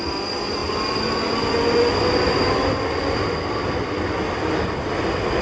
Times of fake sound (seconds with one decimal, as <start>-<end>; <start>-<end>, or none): none